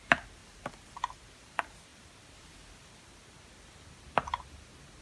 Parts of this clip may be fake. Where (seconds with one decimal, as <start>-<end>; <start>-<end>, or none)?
0.4-1.0; 1.9-5.0